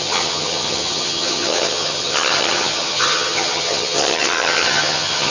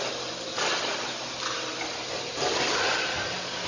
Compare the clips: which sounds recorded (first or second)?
second